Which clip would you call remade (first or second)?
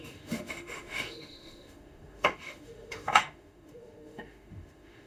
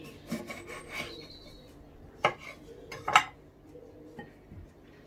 first